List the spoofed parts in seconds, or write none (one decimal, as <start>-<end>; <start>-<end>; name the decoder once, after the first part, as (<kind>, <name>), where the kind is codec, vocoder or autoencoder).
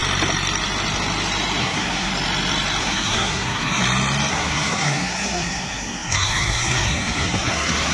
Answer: 1.6-2.1 (codec, SNAC); 2.8-3.8; 4.3-7.9